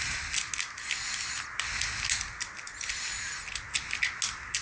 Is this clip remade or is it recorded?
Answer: recorded